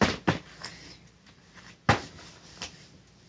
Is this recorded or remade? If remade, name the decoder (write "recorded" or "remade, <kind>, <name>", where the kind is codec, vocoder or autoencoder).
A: recorded